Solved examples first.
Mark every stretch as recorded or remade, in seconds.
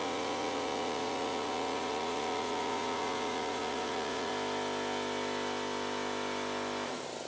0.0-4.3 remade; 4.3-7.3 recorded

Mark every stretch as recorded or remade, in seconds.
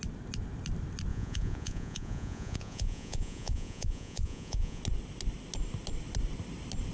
0.0-1.1 recorded; 1.1-4.8 remade; 4.8-6.9 recorded